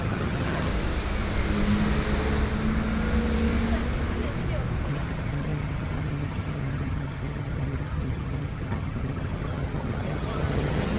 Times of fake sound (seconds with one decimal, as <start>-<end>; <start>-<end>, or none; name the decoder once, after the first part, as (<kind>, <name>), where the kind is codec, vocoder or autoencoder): 0.0-0.7 (vocoder, HiFi-GAN); 4.9-11.0

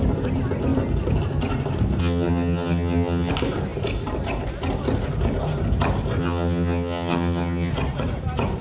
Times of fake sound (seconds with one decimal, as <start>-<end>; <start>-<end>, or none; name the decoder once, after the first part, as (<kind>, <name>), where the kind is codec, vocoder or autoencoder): 2.0-3.3 (vocoder, HiFi-GAN); 6.2-7.7